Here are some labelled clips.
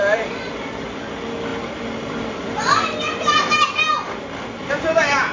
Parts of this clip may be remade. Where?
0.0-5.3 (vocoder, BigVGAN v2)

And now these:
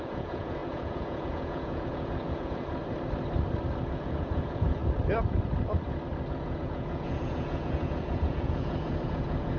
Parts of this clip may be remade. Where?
0.0-2.8 (vocoder, Vocos); 3.9-4.8; 6.3-9.6

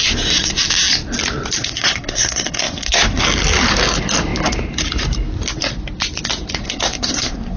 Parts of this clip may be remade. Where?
1.6-3.2 (codec, SNAC); 6.6-7.6

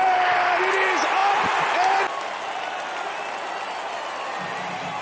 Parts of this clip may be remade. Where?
none

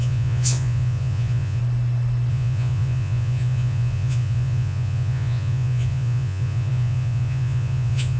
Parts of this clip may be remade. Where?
0.0-1.6 (vocoder, Vocos); 2.3-8.2

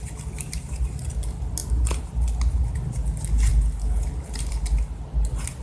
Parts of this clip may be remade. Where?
none

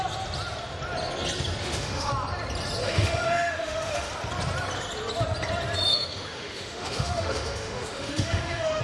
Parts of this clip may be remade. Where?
1.6-2.1 (autoencoder, DAC-VAE); 2.8-4.1; 5.9-8.8

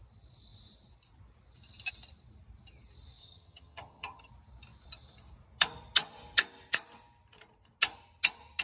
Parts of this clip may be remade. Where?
3.2-4.3 (vocoder, HiFi-GAN)